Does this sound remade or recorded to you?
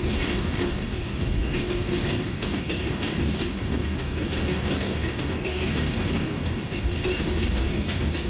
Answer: remade